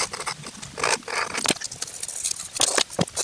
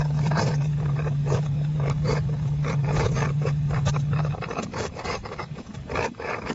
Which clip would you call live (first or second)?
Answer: first